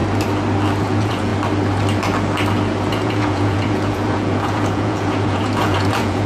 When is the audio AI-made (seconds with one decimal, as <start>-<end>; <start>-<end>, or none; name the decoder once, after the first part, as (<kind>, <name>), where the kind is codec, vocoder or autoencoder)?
0.8-1.3 (vocoder, Vocos); 2.9-6.3